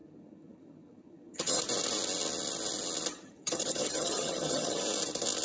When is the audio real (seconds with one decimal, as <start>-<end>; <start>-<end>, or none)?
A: 1.6-3.1; 4.8-5.4